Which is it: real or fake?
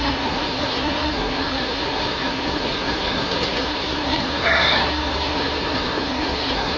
fake